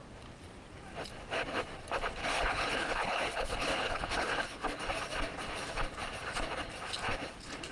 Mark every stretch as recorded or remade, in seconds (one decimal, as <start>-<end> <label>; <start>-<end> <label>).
0.0-2.2 recorded; 2.2-4.8 remade; 4.8-7.7 recorded